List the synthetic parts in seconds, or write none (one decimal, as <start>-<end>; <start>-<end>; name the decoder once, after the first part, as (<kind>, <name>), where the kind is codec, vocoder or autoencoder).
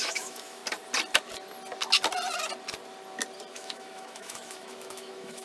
0.0-0.6 (autoencoder, DAC-VAE); 3.5-5.4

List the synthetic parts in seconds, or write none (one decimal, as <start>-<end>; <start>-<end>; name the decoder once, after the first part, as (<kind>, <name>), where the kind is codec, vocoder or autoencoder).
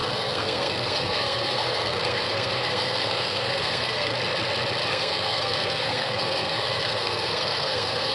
0.0-4.1 (codec, SNAC); 4.9-8.1